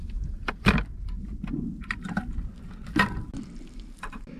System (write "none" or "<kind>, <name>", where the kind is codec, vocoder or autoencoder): none